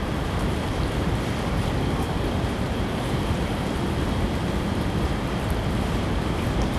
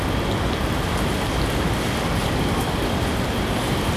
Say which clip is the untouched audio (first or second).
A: second